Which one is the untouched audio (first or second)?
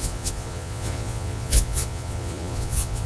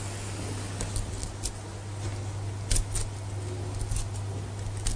second